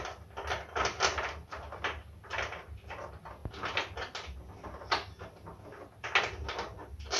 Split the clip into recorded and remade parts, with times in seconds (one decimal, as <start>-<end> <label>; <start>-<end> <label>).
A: 0.0-7.2 recorded